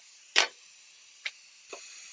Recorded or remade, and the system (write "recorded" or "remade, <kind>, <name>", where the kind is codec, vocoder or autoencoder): recorded